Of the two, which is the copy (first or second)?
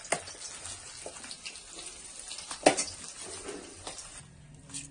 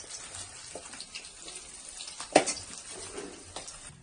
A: second